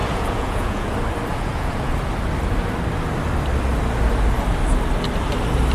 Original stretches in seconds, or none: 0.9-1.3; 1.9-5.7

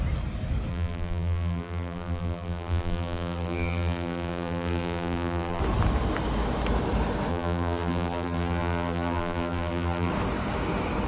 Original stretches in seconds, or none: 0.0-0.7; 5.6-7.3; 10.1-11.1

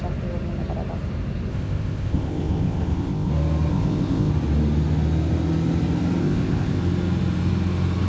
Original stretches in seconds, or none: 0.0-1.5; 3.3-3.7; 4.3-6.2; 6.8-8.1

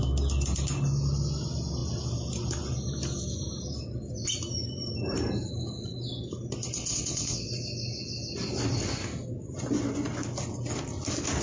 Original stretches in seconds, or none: 0.0-6.8; 7.5-11.4

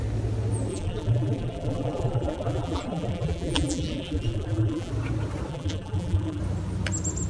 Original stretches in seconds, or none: 0.0-0.7; 4.9-5.5; 6.4-7.3